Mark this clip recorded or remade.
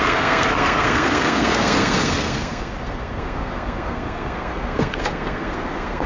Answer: remade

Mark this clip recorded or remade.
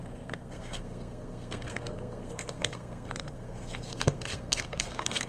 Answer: remade